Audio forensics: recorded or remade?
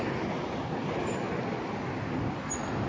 recorded